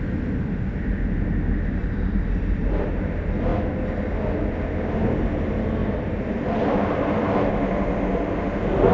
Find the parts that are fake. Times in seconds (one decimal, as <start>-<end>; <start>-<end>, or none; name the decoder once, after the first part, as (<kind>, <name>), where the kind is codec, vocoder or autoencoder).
1.8-3.1 (vocoder, BigVGAN v2); 5.8-7.5